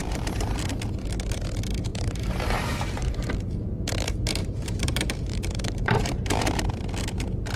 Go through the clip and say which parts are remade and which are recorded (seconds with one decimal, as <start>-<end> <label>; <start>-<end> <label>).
0.0-0.5 remade; 0.5-1.9 recorded; 1.9-3.3 remade; 3.3-4.4 recorded; 4.4-6.6 remade; 6.6-7.6 recorded